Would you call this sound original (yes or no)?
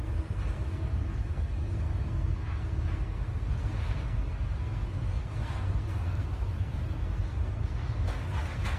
no